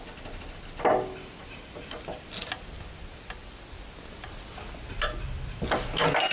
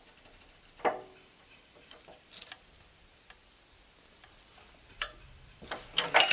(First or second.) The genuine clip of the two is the first